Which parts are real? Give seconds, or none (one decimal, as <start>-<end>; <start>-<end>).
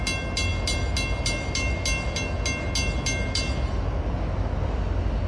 0.0-5.3